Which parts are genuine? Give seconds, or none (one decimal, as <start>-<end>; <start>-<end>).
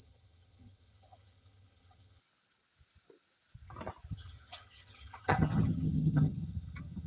2.2-4.1